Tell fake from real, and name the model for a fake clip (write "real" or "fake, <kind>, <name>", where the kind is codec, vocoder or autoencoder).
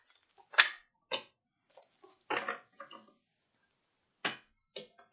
real